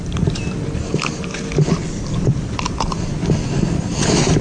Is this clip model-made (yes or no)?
no